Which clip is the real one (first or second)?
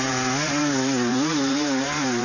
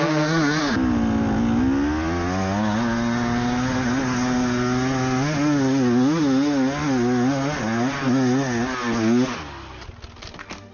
second